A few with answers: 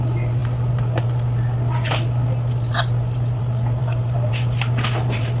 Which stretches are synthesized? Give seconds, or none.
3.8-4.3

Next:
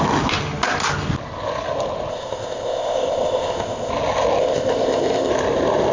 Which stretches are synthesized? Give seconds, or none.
2.1-3.9; 4.4-5.3

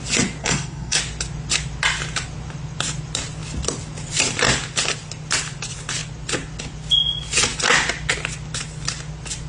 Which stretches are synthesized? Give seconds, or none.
0.4-1.0

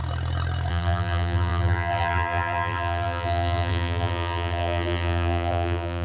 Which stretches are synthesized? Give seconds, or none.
0.7-6.0

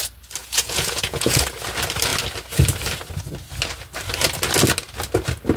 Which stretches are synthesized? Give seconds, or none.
0.4-1.4

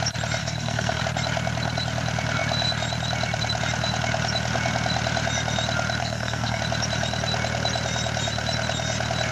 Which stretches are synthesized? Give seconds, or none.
0.4-1.0; 6.0-6.6

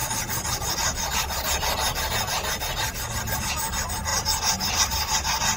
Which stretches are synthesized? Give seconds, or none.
none

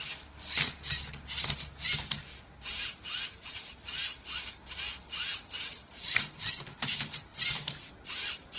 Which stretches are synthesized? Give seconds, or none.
none